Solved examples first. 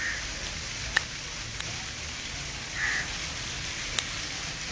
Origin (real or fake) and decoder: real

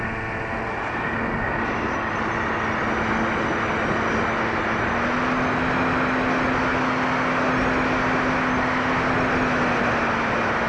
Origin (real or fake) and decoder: real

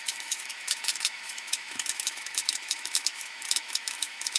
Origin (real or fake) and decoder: fake, autoencoder, DAC-VAE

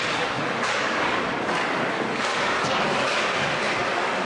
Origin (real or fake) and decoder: fake, codec, DAC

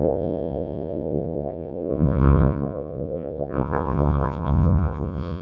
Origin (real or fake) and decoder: fake, vocoder, Vocos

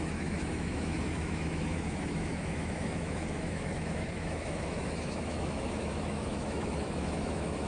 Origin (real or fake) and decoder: fake, autoencoder, DAC-VAE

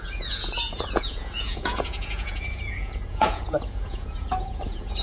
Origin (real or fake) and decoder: fake, vocoder, Vocos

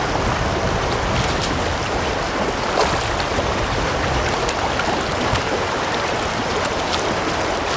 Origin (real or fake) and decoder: real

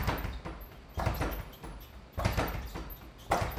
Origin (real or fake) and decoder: real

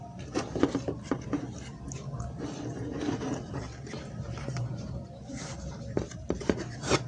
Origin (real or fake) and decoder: fake, vocoder, BigVGAN v2